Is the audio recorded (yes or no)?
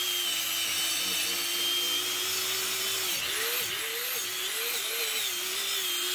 yes